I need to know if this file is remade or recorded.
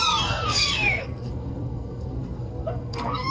remade